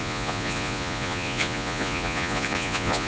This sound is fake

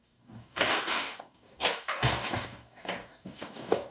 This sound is fake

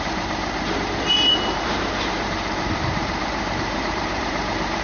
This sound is fake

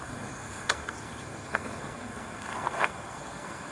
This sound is fake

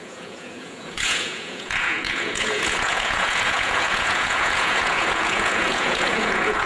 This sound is fake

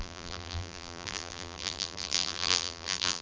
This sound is fake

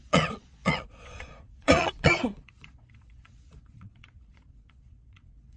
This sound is fake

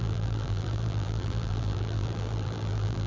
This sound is fake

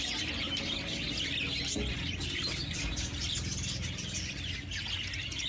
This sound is real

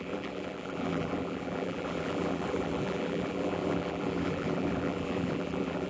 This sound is fake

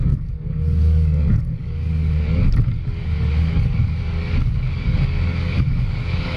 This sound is fake